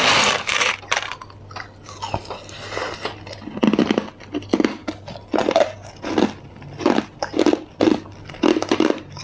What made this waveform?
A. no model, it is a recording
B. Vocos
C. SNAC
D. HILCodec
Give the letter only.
A